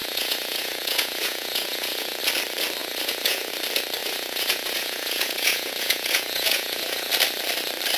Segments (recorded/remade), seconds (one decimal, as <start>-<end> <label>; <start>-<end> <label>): 0.0-2.2 remade; 2.2-2.8 recorded; 2.8-3.5 remade; 3.5-4.0 recorded; 4.0-7.1 remade; 7.1-8.0 recorded